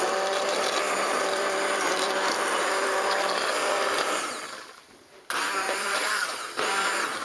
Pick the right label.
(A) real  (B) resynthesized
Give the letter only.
B